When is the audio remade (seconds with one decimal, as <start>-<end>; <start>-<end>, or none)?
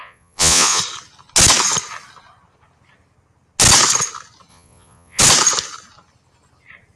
0.0-0.8; 4.5-5.2